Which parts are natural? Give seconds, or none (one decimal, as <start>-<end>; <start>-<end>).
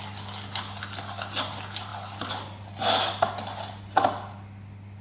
0.0-5.0